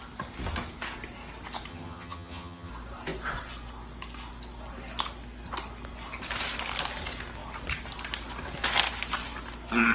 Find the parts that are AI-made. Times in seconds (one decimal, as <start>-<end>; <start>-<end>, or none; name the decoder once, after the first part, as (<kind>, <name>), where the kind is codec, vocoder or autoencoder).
1.7-2.7 (vocoder, HiFi-GAN)